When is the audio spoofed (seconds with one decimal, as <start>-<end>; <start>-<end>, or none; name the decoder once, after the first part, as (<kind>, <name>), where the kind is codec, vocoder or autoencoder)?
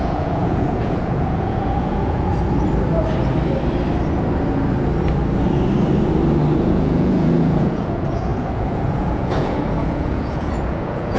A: 0.0-2.3 (vocoder, Vocos); 6.7-11.2